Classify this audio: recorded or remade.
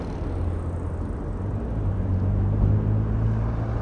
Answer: recorded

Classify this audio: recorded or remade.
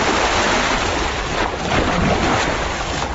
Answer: recorded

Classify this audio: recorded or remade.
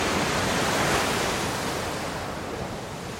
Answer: recorded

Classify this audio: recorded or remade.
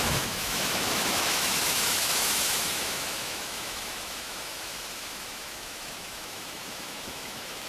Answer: remade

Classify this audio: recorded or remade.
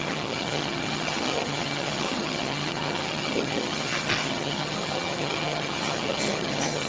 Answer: remade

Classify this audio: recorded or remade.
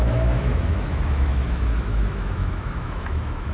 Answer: remade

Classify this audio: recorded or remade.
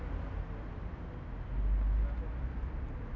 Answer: recorded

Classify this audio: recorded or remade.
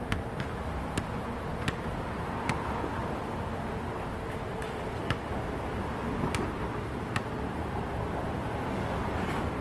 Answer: recorded